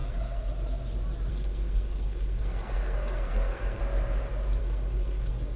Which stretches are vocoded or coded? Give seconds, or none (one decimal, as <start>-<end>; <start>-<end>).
0.0-0.5; 1.3-3.8; 4.6-5.6